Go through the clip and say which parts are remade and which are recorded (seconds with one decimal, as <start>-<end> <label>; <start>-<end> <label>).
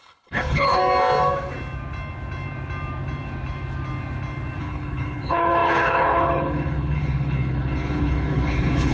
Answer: 0.0-0.8 remade; 0.8-4.6 recorded; 4.6-8.9 remade